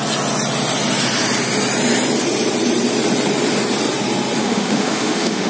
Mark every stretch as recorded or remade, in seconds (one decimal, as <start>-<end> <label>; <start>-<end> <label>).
0.0-4.4 recorded; 4.4-5.5 remade